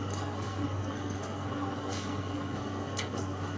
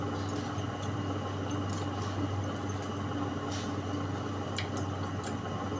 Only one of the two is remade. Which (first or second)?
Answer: first